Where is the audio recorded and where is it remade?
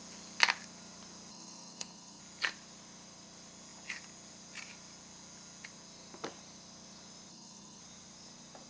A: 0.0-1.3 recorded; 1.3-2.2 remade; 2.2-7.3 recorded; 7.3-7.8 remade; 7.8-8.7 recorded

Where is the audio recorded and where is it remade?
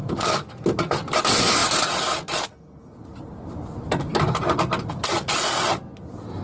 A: 0.0-1.2 remade; 1.2-4.1 recorded; 4.1-5.8 remade; 5.8-6.4 recorded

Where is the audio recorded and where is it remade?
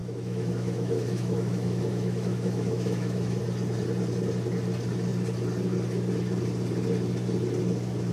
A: 0.0-3.4 remade; 3.4-8.1 recorded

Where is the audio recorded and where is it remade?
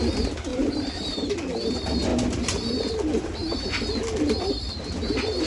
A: 0.0-5.5 recorded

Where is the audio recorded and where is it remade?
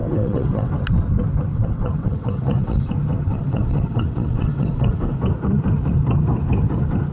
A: 0.0-0.7 remade; 0.7-1.5 recorded; 1.5-2.9 remade; 2.9-3.3 recorded; 3.3-5.2 remade; 5.2-7.1 recorded